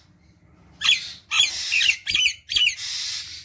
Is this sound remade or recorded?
recorded